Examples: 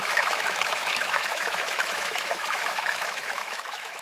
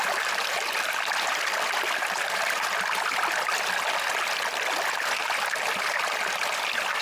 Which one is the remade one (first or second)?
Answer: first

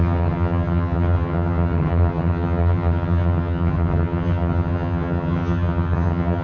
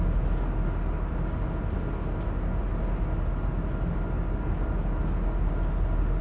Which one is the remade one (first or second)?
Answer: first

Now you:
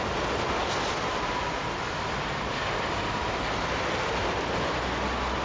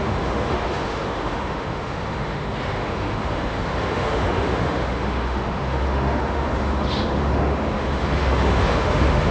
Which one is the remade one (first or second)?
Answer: second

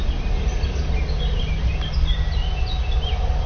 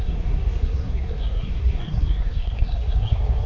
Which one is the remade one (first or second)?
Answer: second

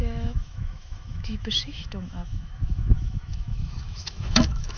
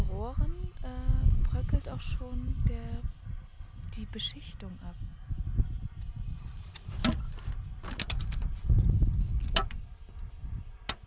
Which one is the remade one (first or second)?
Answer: first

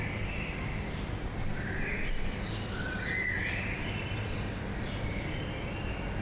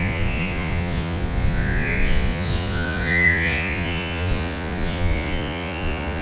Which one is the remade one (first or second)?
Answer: second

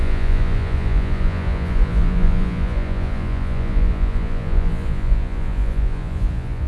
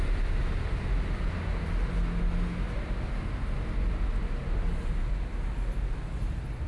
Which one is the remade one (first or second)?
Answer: first